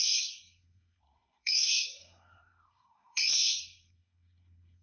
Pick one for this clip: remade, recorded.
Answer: remade